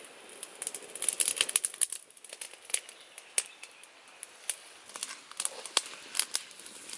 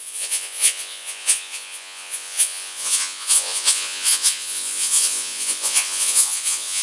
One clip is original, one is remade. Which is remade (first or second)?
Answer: second